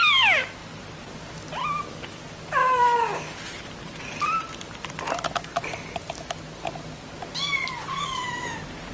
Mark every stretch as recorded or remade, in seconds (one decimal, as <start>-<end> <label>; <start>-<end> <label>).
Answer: 0.0-0.6 recorded; 0.6-1.1 remade; 1.1-2.6 recorded; 2.6-4.9 remade; 4.9-7.5 recorded; 7.5-8.9 remade